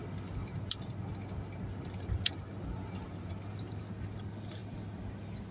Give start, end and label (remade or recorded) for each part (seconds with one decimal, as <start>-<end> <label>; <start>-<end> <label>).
0.0-5.5 recorded